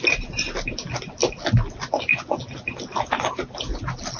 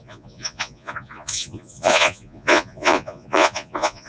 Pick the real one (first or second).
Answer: first